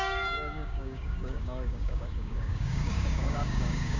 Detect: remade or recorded remade